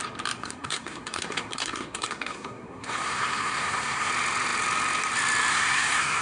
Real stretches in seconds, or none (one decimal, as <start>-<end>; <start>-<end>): 0.0-0.4; 4.1-5.5

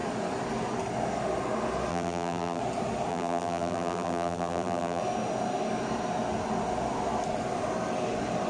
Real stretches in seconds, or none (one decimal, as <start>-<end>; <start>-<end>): 0.0-1.9; 2.6-3.1; 5.0-8.5

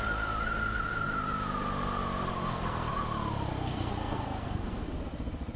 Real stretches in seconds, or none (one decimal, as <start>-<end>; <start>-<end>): 0.0-2.4; 2.9-3.5; 4.9-5.6

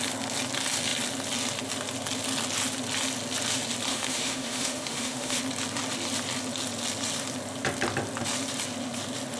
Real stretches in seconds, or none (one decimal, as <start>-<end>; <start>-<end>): 0.0-3.9; 5.4-9.4

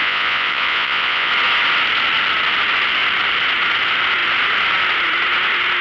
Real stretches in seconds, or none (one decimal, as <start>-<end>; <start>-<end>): 1.3-5.8

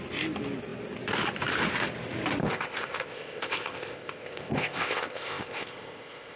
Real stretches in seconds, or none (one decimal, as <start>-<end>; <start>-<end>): 0.0-2.4

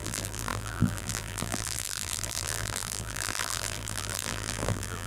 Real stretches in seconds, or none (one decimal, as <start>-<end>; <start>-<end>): none

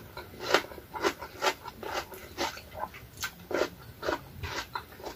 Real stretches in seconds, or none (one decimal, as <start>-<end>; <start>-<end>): 0.0-5.2